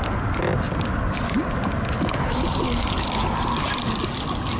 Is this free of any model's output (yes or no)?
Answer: yes